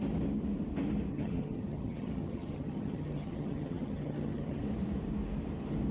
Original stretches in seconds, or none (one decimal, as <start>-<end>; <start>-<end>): 0.0-1.1; 4.6-5.9